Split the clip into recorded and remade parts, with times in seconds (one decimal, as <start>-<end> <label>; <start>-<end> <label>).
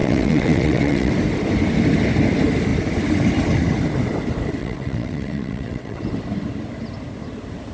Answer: 0.0-1.1 remade; 1.1-4.6 recorded; 4.6-6.0 remade; 6.0-7.7 recorded